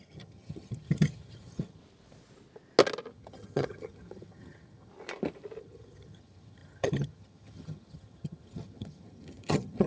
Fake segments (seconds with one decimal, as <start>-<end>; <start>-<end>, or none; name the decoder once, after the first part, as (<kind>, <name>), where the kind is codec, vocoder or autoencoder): 0.0-1.8 (vocoder, HiFi-GAN); 3.1-4.9; 5.6-9.9